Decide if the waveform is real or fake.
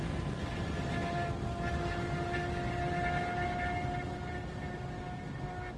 real